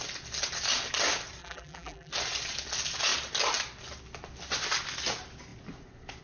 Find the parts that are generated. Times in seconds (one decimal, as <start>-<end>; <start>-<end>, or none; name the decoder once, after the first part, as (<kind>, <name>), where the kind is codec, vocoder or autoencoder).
1.4-2.1 (vocoder, BigVGAN v2)